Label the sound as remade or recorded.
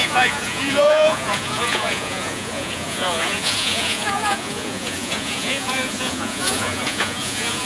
remade